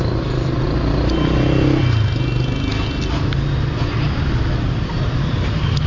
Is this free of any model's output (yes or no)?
yes